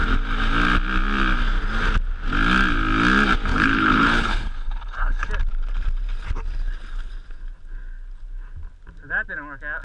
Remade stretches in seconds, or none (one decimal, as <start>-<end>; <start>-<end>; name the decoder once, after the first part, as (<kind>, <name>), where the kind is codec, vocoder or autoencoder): 3.5-5.3 (codec, HILCodec)

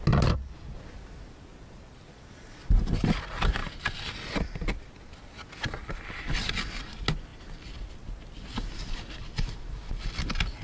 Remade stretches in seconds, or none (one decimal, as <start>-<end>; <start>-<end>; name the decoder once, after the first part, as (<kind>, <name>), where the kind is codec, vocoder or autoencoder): 3.6-4.1 (vocoder, BigVGAN v2)